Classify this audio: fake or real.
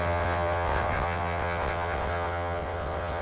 fake